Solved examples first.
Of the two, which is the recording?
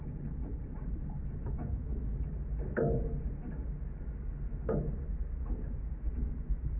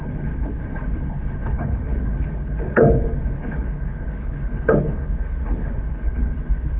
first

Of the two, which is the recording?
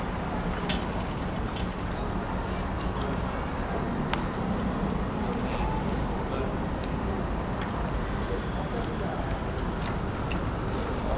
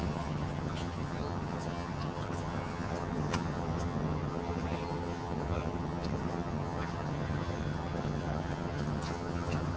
first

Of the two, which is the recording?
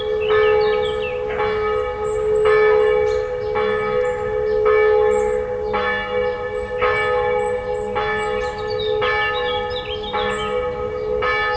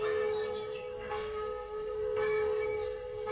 first